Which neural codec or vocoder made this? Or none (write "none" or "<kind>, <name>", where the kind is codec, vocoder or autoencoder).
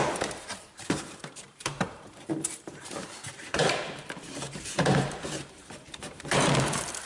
vocoder, BigVGAN v2